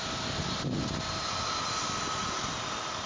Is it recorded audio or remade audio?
recorded